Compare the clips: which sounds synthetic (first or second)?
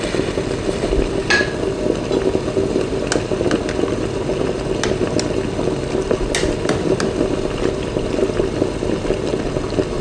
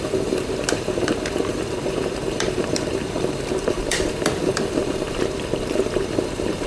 second